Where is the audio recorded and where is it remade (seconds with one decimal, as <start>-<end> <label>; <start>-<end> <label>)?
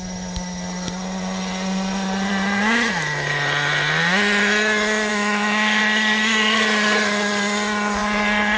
0.0-5.1 recorded; 5.1-5.8 remade; 5.8-8.6 recorded